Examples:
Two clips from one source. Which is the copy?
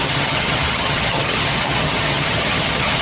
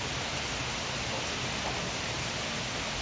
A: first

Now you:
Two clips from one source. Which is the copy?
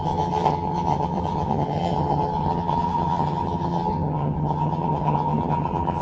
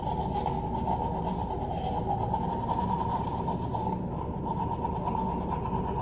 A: first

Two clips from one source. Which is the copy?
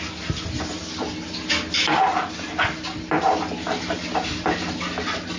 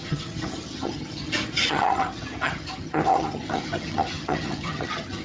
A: second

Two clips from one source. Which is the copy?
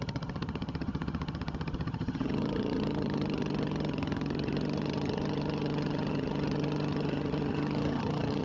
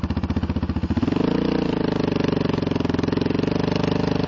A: first